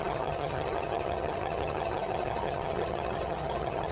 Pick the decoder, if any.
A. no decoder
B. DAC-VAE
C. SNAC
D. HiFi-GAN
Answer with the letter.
D